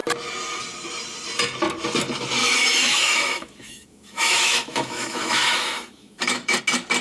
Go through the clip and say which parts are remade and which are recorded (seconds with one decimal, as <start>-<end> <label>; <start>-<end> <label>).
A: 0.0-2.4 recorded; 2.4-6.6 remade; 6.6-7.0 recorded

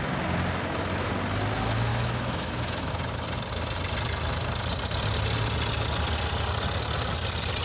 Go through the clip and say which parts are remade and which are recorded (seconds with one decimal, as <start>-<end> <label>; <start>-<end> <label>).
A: 0.0-1.9 recorded; 1.9-2.9 remade; 2.9-7.6 recorded

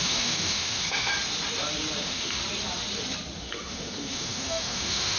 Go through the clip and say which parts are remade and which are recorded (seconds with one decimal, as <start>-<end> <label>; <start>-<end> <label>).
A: 0.0-1.1 remade; 1.1-2.0 recorded; 2.0-2.4 remade; 2.4-3.4 recorded; 3.4-5.2 remade

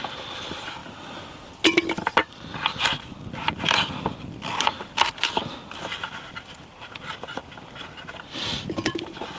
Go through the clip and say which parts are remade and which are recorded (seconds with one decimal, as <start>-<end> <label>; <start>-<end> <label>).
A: 0.0-9.4 recorded

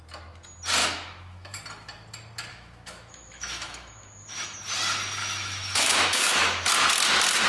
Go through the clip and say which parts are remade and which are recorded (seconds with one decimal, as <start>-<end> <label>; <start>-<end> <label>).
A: 0.0-0.8 recorded; 0.8-1.6 remade; 1.6-2.5 recorded; 2.5-4.6 remade; 4.6-5.2 recorded; 5.2-6.7 remade; 6.7-7.5 recorded

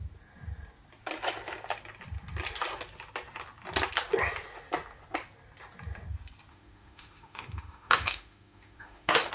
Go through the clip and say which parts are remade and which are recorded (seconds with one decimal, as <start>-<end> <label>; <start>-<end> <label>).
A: 0.0-6.5 recorded; 6.5-9.3 remade

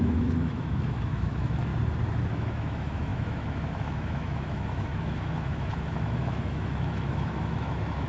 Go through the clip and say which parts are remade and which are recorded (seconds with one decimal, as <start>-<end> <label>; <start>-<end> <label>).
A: 0.0-1.7 remade; 1.7-2.3 recorded; 2.3-8.1 remade